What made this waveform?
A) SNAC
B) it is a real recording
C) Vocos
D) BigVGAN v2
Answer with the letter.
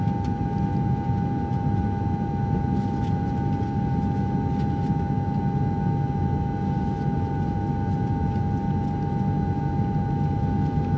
B